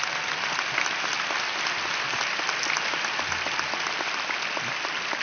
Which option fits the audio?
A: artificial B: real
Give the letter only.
B